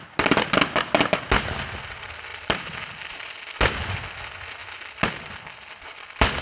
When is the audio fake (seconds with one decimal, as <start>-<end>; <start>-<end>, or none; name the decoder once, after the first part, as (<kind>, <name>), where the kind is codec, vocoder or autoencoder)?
none